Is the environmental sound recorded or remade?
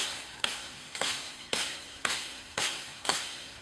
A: remade